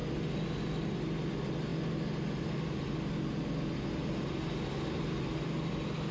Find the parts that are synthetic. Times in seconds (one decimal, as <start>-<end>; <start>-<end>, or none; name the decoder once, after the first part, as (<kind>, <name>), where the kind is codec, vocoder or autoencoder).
none